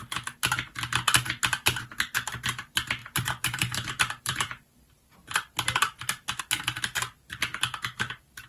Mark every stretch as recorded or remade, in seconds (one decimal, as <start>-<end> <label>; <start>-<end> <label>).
0.0-3.0 recorded; 3.0-6.4 remade; 6.4-8.5 recorded